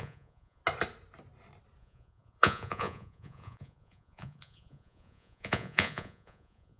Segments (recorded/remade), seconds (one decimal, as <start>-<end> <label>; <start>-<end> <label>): 0.0-0.6 remade; 0.6-1.8 recorded; 1.8-6.8 remade